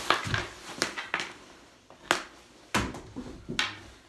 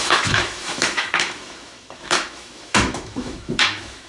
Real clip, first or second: first